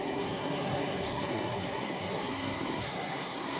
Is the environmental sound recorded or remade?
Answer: remade